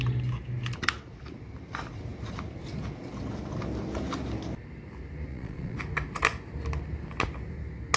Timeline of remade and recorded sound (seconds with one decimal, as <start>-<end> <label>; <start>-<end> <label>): 0.0-5.3 recorded; 5.3-5.8 remade; 5.8-8.0 recorded